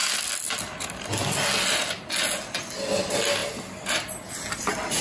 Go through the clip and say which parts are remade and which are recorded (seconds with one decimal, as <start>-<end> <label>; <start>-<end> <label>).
0.0-5.0 recorded